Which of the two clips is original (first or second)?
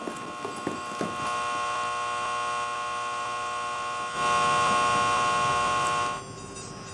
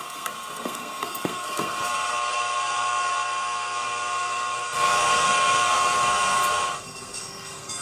first